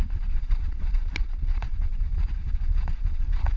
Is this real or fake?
fake